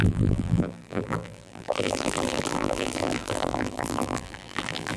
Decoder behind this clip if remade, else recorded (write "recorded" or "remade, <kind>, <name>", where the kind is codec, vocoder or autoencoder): remade, vocoder, BigVGAN v2